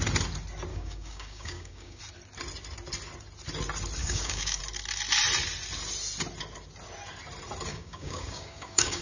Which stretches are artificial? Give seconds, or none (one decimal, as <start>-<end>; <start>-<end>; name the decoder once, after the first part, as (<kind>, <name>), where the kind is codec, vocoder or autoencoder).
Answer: 0.7-2.0 (codec, DAC); 4.0-4.6; 7.7-9.0